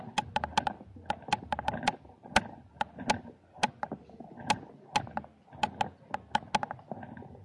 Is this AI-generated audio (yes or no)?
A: no